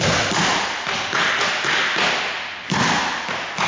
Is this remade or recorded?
recorded